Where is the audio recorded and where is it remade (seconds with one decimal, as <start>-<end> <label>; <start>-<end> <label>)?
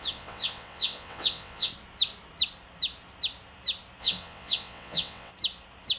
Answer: 0.0-1.7 remade; 1.7-4.0 recorded; 4.0-5.3 remade; 5.3-6.0 recorded